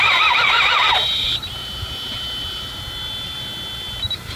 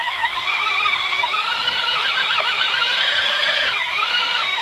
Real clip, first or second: first